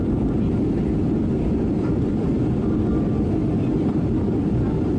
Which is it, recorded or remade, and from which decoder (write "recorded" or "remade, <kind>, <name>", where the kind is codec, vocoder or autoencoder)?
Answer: remade, vocoder, BigVGAN v2